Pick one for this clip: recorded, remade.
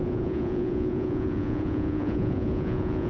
remade